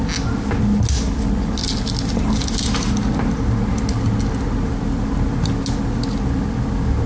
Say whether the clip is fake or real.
real